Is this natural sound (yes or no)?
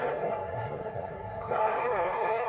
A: no